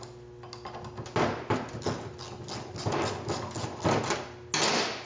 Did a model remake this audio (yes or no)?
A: no